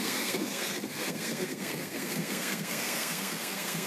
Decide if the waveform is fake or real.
fake